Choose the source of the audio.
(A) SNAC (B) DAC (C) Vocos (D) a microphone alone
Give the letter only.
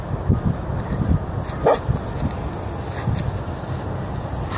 D